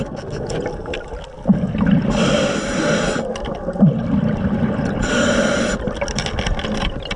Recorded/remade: recorded